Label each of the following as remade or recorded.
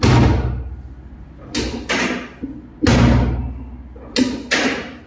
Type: recorded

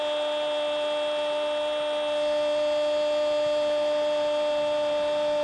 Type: recorded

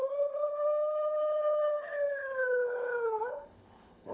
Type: remade